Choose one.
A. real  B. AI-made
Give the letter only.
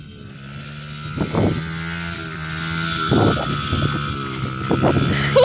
A